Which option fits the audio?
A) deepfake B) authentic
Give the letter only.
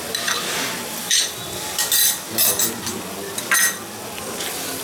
B